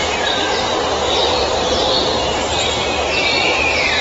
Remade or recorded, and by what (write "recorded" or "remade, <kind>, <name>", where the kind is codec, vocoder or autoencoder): remade, vocoder, BigVGAN v2